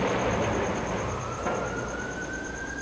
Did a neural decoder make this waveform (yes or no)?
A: no